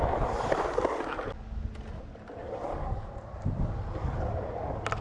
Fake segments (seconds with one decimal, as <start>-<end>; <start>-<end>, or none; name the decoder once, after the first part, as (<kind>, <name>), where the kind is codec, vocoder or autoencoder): 2.4-4.5 (vocoder, BigVGAN v2)